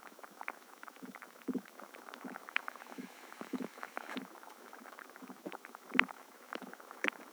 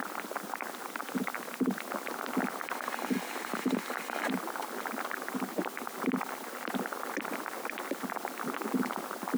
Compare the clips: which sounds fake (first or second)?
first